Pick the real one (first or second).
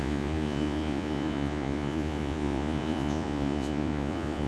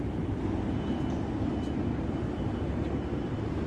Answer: second